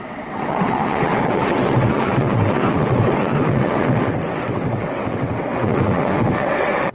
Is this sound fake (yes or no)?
yes